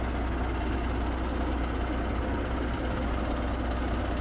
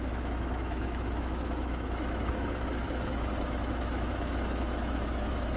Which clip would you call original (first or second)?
first